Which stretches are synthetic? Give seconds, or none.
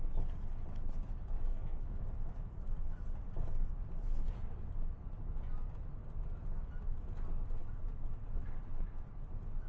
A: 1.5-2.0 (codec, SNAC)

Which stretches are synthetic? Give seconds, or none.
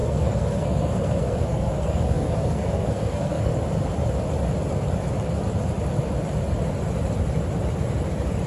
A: 0.0-3.5 (codec, SNAC)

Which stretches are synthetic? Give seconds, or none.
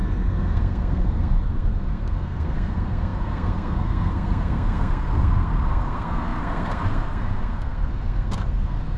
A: 0.0-9.0 (codec, SNAC)